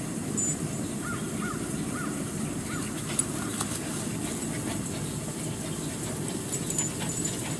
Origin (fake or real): real